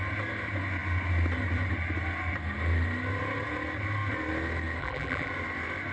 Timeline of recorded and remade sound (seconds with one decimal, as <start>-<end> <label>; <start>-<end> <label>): 0.0-4.8 recorded; 4.8-5.3 remade; 5.3-5.9 recorded